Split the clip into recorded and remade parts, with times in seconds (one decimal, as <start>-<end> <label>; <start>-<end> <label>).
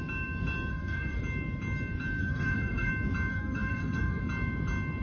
0.0-0.7 recorded; 0.7-1.2 remade; 1.2-2.2 recorded; 2.2-2.9 remade; 2.9-3.3 recorded; 3.3-4.2 remade; 4.2-5.0 recorded